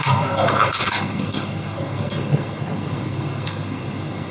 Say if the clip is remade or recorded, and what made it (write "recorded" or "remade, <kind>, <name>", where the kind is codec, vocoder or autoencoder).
remade, codec, SNAC